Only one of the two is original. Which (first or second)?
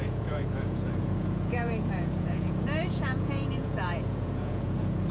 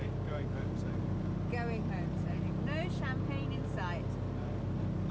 second